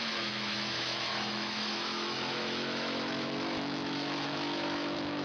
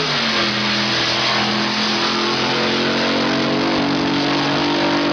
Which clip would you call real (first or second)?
second